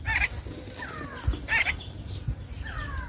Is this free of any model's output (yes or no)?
yes